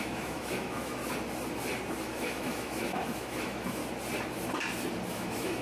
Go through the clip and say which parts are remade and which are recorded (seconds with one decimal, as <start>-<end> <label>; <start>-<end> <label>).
0.0-1.0 remade; 1.0-2.0 recorded; 2.0-3.8 remade; 3.8-5.1 recorded; 5.1-5.6 remade